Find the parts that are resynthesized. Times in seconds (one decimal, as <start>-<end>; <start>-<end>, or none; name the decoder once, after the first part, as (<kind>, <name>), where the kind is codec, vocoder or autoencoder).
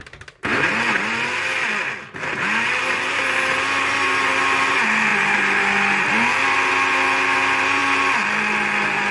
none